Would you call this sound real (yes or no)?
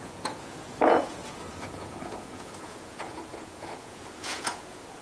no